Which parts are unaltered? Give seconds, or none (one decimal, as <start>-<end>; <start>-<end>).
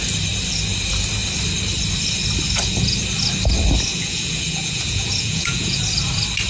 0.0-3.9; 5.8-6.5